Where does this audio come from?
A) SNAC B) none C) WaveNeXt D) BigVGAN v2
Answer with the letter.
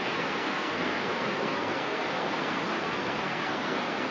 A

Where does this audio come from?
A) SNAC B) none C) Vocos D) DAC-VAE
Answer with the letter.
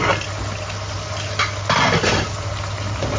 B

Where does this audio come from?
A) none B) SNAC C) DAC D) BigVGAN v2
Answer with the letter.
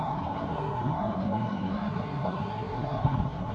B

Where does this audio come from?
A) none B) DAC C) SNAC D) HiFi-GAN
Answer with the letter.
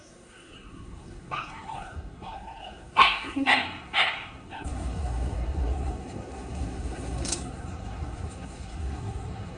C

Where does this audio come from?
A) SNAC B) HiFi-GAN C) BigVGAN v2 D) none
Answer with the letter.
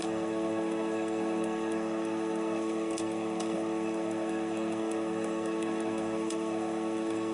A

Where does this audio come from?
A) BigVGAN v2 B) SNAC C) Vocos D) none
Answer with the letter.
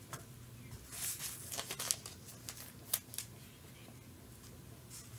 D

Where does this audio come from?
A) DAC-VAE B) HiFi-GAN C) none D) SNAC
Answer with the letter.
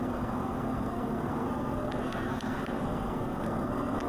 D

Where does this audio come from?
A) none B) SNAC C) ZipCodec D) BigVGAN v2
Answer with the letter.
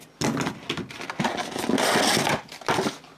A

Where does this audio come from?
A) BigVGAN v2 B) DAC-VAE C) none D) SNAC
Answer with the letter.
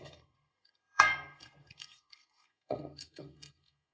D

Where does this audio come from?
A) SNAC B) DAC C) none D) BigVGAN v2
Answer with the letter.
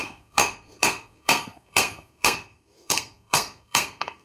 A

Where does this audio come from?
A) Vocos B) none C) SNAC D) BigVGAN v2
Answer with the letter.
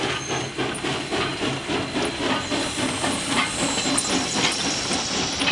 B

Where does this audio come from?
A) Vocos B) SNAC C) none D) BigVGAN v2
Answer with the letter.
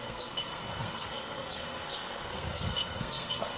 B